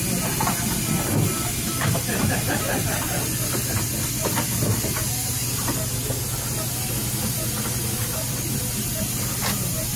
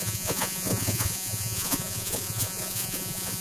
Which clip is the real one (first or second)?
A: first